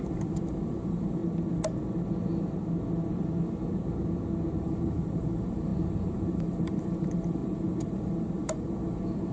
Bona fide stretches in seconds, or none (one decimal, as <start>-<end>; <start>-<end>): 1.2-4.6